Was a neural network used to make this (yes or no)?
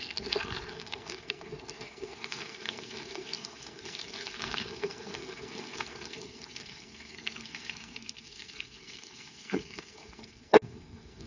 yes